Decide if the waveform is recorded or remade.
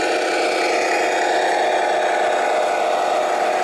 recorded